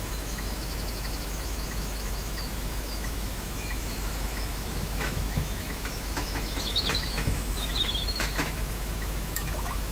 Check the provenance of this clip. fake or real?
fake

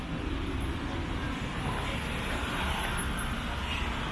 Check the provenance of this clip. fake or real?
real